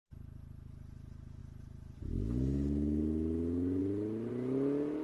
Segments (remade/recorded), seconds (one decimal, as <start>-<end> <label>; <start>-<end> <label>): 0.0-5.0 recorded